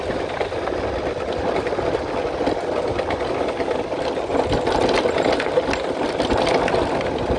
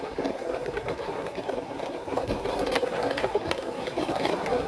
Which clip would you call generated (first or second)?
second